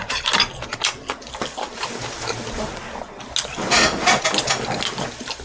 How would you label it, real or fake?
real